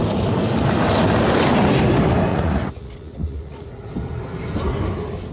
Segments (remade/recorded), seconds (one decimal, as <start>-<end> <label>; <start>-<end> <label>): 0.0-2.3 recorded; 2.3-3.9 remade; 3.9-5.3 recorded